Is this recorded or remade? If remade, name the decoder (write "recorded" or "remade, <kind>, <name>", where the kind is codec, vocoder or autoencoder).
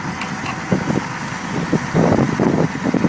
recorded